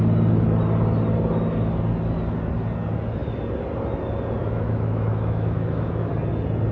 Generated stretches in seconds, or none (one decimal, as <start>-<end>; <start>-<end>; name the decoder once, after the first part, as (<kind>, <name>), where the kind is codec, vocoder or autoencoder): 4.4-6.1 (autoencoder, DAC-VAE)